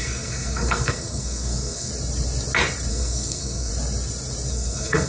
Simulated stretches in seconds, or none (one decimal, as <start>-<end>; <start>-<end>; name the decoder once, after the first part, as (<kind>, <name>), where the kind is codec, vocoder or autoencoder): 0.0-1.9 (codec, SNAC); 2.9-3.7; 4.5-5.1